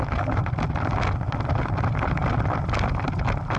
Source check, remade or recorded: recorded